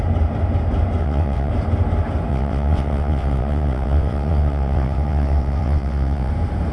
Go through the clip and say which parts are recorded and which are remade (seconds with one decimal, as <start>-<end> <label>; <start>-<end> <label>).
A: 0.0-1.0 recorded; 1.0-1.5 remade; 1.5-2.3 recorded; 2.3-6.3 remade; 6.3-6.7 recorded